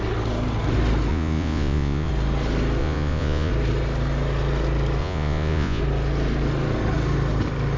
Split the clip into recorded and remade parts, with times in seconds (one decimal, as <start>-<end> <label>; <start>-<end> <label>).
0.0-1.1 recorded; 1.1-2.1 remade; 2.1-2.8 recorded; 2.8-3.5 remade; 3.5-5.0 recorded; 5.0-5.8 remade; 5.8-7.8 recorded